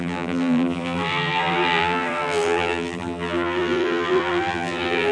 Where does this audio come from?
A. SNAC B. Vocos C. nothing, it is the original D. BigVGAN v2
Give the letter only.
D